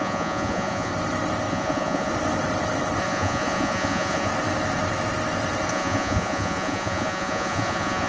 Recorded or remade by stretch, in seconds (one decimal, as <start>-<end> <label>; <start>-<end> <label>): 0.0-0.9 remade; 0.9-1.5 recorded; 1.5-2.1 remade; 2.1-3.0 recorded; 3.0-4.3 remade; 4.3-5.7 recorded; 5.7-8.1 remade